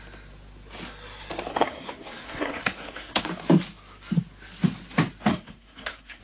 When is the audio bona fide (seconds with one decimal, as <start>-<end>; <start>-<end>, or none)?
0.0-1.5; 3.2-5.3